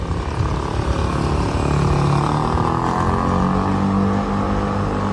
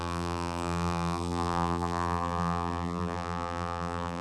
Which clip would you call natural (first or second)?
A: first